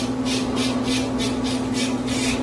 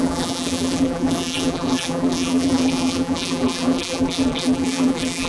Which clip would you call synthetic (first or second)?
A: second